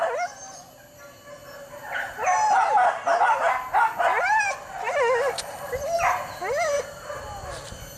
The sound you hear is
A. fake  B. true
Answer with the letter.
B